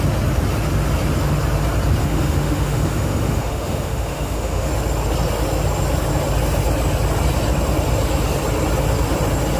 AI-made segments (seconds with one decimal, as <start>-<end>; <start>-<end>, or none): 2.0-4.7

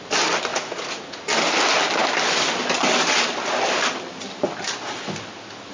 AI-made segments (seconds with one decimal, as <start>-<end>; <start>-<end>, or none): 0.5-1.2

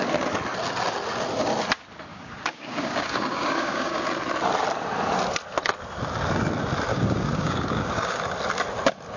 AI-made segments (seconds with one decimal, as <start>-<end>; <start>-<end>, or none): 2.1-4.0; 6.9-8.2